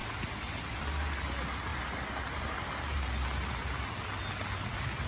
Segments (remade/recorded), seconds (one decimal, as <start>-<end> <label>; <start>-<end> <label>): 0.0-5.1 recorded